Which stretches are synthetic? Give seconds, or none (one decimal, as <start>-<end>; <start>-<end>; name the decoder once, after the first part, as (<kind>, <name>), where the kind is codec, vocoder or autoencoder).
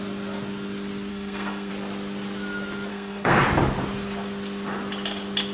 1.1-1.7 (codec, SNAC); 2.9-3.4